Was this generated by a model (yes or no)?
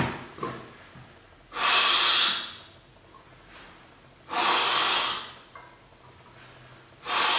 no